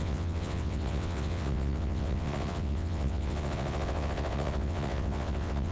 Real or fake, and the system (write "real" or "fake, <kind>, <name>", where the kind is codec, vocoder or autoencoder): fake, vocoder, WaveNeXt